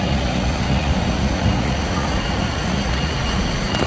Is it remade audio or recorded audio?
remade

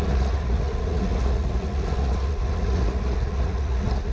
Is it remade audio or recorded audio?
remade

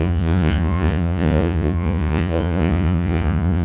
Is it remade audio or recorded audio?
remade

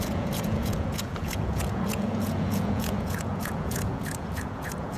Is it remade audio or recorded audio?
remade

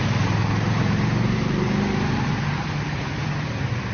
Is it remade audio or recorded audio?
recorded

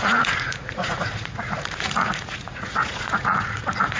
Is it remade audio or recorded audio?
remade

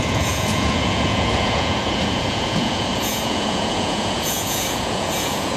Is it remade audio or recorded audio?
remade